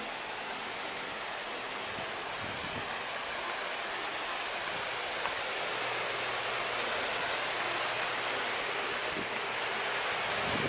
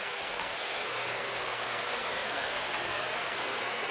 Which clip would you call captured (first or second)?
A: first